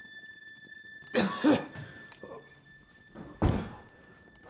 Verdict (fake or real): real